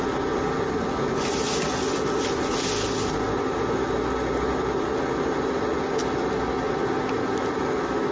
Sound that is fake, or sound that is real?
real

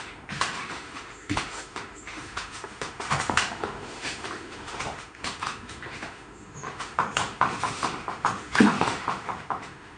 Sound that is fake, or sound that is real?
fake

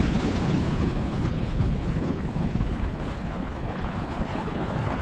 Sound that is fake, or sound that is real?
fake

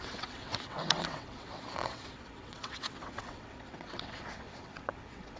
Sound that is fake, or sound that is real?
fake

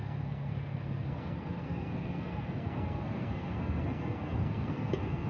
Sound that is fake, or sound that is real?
fake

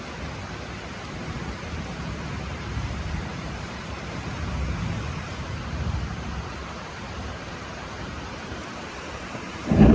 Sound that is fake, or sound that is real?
fake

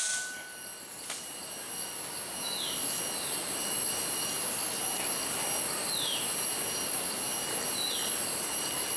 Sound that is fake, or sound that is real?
real